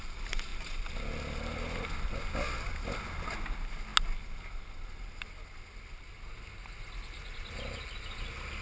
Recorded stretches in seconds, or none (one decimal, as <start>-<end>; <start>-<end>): 0.0-8.6